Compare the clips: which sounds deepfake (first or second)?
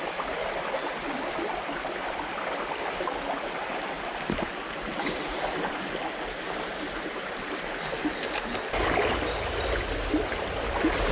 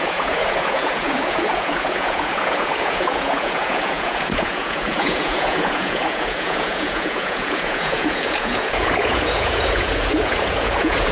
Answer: second